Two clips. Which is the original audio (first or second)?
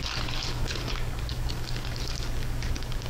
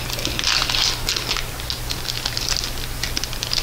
second